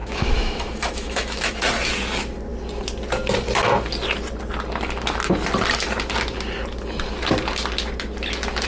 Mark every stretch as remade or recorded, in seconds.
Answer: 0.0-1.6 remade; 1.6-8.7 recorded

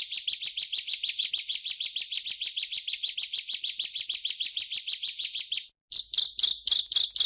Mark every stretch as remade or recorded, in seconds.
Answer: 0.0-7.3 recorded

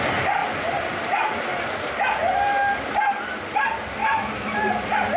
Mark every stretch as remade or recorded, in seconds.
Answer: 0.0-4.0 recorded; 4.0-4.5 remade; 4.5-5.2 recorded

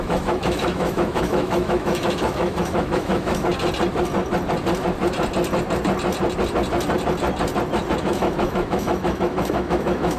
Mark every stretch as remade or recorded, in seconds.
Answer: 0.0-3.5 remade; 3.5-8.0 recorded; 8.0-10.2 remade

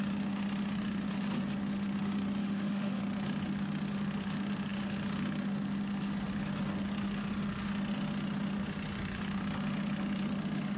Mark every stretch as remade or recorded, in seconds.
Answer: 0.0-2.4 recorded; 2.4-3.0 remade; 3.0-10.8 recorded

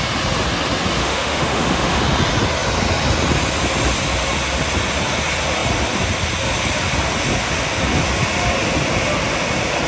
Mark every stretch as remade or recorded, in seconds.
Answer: 0.0-1.0 recorded; 1.0-2.0 remade; 2.0-9.9 recorded